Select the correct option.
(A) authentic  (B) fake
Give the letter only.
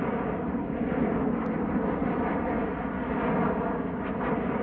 A